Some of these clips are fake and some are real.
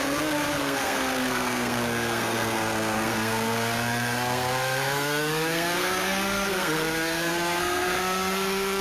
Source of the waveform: fake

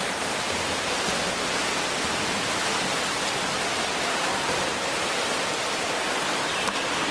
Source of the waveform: real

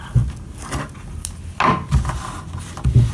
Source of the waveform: real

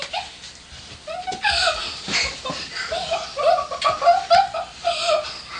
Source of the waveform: real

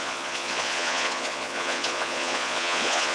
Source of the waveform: fake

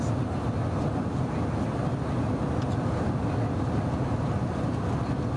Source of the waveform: real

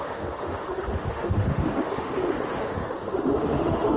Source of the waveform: fake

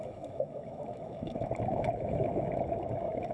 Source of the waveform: fake